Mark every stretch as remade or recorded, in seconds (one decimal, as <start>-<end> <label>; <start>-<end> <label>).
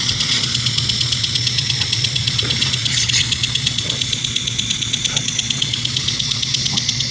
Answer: 0.0-7.1 remade